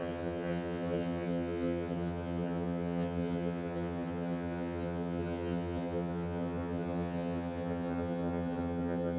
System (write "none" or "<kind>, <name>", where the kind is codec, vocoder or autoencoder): vocoder, HiFi-GAN